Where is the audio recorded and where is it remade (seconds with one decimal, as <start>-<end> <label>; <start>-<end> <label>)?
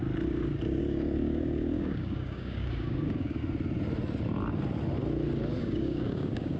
0.0-0.8 recorded; 0.8-3.4 remade; 3.4-5.6 recorded; 5.6-6.6 remade